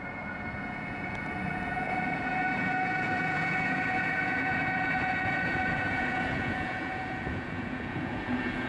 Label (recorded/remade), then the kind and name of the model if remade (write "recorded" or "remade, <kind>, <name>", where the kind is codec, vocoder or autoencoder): remade, vocoder, Vocos